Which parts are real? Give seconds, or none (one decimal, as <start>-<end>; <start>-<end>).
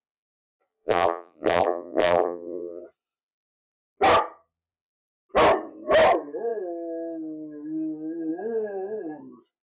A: 0.0-0.7; 2.8-9.6